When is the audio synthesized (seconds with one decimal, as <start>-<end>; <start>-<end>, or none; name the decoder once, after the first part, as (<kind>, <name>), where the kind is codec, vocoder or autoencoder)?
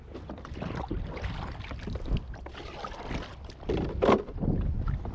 none